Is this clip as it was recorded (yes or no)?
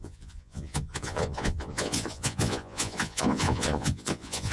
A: no